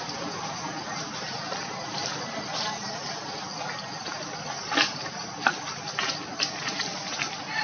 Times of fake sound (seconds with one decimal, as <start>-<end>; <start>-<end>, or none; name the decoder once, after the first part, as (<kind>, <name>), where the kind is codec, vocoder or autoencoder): none